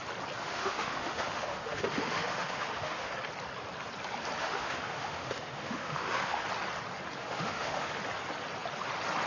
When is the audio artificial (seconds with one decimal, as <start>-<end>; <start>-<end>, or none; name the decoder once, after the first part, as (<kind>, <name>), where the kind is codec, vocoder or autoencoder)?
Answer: 0.4-3.1 (autoencoder, DAC-VAE); 4.4-6.4; 7.2-7.9